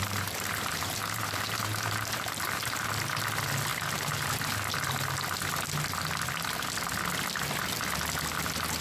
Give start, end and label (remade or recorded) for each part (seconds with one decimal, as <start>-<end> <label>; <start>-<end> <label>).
0.0-2.9 remade; 2.9-3.7 recorded; 3.7-4.3 remade; 4.3-8.8 recorded